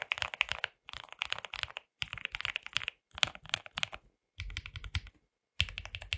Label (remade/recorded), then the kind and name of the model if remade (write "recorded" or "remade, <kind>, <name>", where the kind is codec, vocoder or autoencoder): recorded